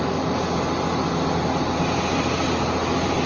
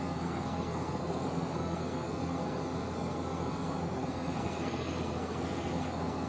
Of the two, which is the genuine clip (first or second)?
first